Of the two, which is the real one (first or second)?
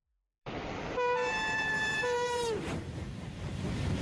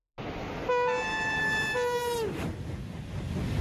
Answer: second